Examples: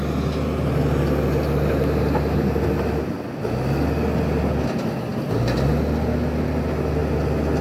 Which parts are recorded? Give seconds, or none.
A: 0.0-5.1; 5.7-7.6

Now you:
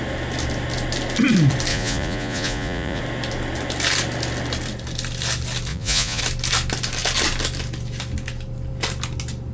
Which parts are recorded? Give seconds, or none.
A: 0.0-1.7; 3.0-5.7; 6.2-9.5

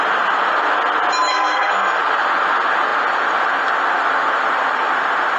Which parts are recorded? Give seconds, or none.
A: 0.0-1.3; 2.0-5.4

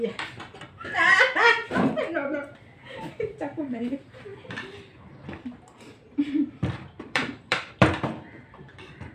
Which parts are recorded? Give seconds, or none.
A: 1.6-3.6

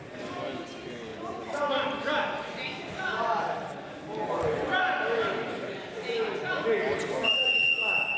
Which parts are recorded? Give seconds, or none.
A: 0.0-1.1; 2.1-2.7; 6.5-8.2

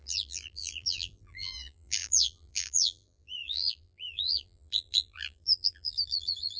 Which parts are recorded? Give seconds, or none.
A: none

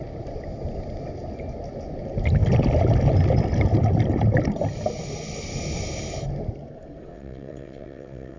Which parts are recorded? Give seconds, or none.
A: 0.0-7.1